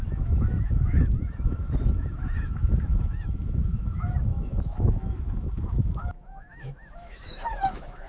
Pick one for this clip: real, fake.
fake